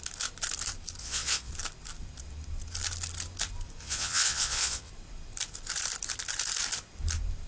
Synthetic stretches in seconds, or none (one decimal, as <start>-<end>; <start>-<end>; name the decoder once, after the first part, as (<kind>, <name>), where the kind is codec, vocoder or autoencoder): 1.0-1.5 (vocoder, WaveNeXt); 3.8-4.9